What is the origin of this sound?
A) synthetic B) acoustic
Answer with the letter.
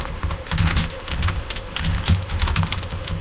A